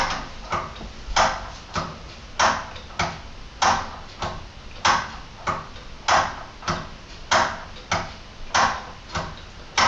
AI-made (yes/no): no